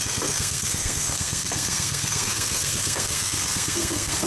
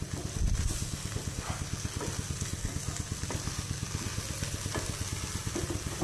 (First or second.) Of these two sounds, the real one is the second